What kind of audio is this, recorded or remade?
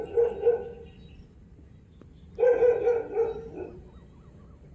recorded